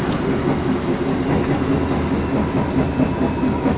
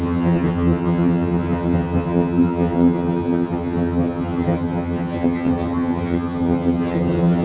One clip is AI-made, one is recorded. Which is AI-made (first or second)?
second